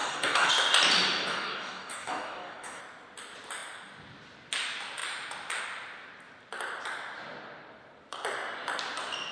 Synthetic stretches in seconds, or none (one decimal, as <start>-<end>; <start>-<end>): 0.0-0.5; 1.2-2.8